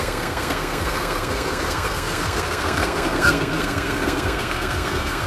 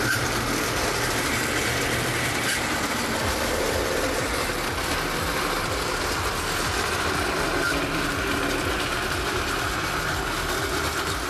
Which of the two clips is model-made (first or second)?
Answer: first